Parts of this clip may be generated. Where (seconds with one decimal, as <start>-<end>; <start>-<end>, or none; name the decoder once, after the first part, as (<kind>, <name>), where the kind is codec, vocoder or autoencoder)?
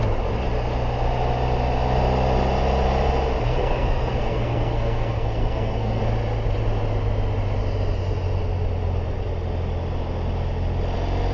3.5-6.0 (codec, SNAC)